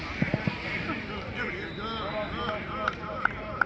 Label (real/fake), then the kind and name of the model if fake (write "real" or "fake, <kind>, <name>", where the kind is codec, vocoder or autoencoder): real